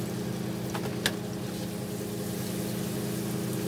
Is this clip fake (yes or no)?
no